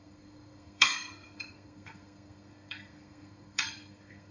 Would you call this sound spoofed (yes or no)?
yes